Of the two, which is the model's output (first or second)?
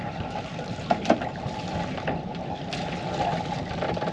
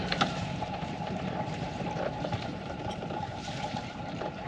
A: second